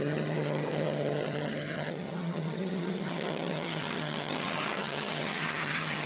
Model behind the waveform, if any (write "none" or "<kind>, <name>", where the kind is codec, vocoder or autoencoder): vocoder, HiFi-GAN